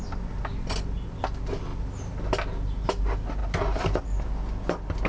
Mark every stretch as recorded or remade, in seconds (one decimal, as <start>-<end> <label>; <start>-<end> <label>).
0.0-5.1 recorded